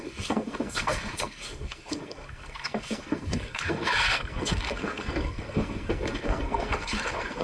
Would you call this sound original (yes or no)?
no